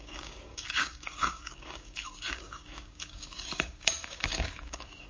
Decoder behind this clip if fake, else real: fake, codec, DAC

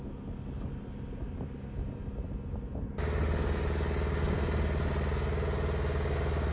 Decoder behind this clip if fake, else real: real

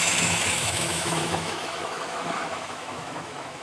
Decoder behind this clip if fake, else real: fake, autoencoder, DAC-VAE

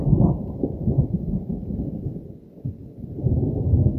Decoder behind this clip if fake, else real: real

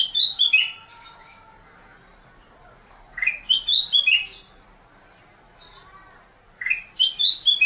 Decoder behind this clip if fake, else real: real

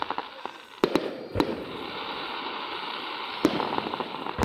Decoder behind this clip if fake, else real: real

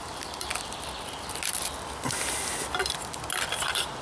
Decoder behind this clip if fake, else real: real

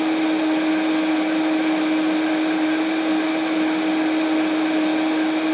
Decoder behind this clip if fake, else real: real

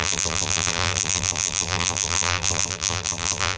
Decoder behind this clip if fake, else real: fake, vocoder, BigVGAN v2